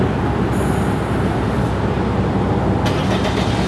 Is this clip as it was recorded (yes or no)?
yes